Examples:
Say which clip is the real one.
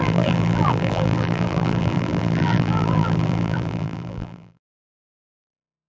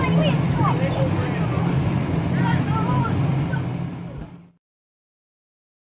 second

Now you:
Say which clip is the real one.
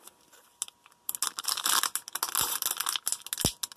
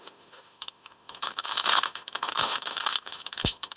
first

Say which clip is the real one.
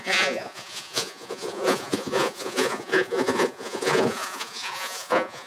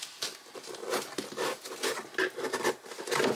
second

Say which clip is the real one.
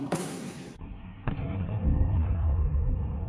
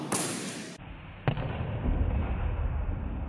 second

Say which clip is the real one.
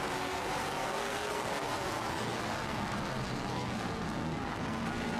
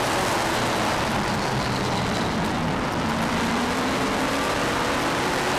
second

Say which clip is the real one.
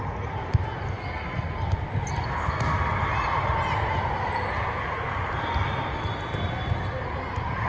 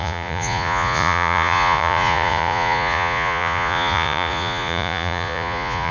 first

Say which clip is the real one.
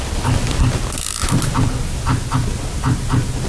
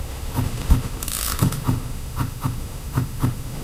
first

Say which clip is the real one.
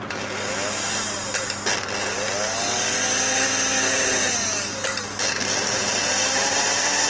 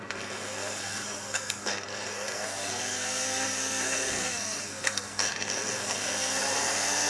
first